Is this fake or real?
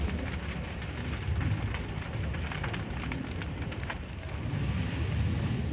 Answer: real